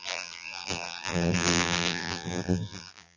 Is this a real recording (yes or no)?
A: no